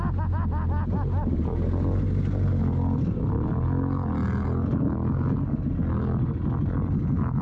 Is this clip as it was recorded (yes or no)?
yes